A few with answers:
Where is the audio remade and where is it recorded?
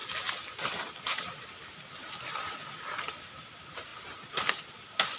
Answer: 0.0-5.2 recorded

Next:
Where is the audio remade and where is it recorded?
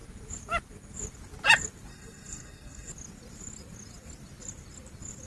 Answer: 0.0-1.9 recorded; 1.9-2.9 remade; 2.9-5.3 recorded